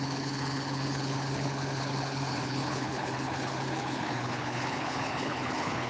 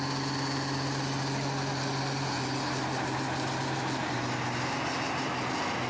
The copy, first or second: first